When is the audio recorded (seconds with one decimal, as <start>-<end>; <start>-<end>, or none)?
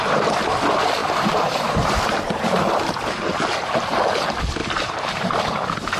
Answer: 0.0-1.0; 2.9-4.6; 5.3-6.0